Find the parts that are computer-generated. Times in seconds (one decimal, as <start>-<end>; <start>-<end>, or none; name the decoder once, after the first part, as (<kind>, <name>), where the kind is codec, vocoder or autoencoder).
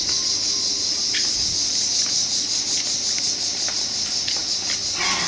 none